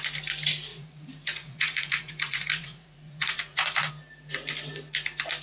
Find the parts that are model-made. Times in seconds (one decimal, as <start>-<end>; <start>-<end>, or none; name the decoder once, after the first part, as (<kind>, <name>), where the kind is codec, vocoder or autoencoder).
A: 0.7-3.9 (vocoder, Vocos)